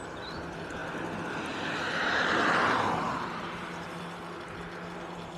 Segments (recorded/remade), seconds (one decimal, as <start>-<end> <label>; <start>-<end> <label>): 0.0-5.4 recorded